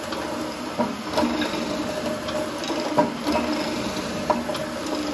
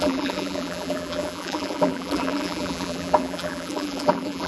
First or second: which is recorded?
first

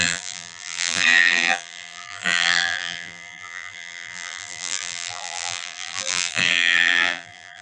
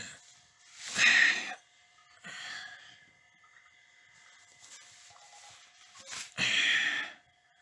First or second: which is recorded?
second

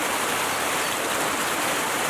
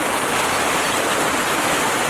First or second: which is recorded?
second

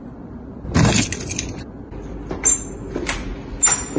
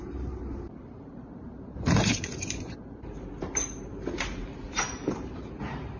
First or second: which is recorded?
first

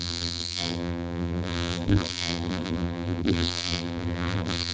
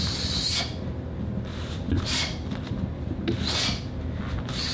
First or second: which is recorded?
second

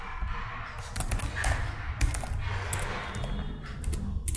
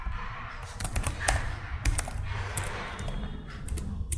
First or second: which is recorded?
first